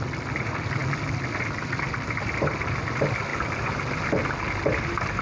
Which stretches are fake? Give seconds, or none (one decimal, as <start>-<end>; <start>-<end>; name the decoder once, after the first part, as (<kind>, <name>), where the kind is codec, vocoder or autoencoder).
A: none

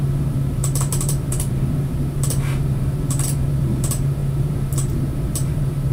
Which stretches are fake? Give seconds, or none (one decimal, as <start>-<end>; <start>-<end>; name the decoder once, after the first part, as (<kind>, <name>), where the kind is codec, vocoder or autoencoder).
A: 0.0-5.9 (vocoder, BigVGAN v2)

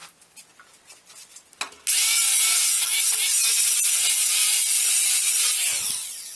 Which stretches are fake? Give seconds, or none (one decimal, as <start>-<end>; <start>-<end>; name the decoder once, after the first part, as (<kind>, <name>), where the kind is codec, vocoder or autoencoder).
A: 3.6-6.4 (vocoder, BigVGAN v2)

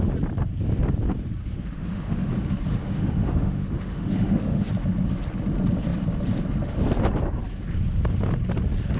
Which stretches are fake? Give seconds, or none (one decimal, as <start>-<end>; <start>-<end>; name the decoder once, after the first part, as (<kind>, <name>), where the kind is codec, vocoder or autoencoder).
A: 1.4-2.3 (autoencoder, DAC-VAE); 2.7-4.7

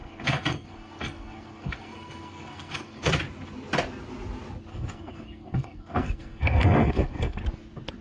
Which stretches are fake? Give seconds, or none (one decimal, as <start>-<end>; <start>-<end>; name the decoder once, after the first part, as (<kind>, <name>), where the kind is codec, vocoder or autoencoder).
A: 0.0-3.1 (codec, SNAC); 4.7-7.4